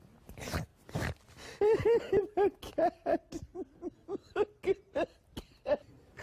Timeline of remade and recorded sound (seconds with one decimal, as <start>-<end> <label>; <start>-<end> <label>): 0.0-0.7 recorded; 0.7-1.6 remade; 1.6-6.2 recorded